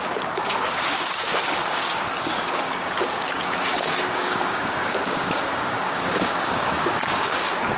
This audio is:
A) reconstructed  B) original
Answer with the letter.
A